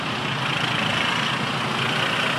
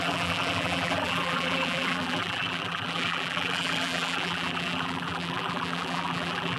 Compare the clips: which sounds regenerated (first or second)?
second